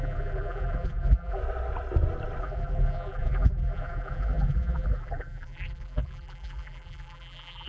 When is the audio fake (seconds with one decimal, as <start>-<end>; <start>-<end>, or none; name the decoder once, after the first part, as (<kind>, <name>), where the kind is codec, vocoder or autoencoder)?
0.0-1.4 (vocoder, BigVGAN v2); 2.4-7.7